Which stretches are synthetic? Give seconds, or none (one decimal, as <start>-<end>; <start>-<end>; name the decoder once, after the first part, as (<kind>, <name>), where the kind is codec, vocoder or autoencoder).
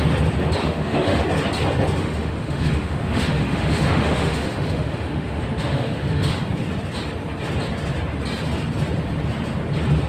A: 0.6-1.2 (autoencoder, DAC-VAE); 2.0-6.3